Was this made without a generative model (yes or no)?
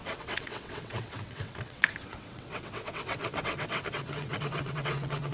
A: no